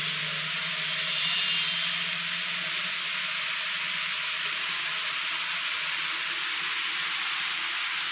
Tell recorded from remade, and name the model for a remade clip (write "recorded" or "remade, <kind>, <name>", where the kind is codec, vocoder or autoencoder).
recorded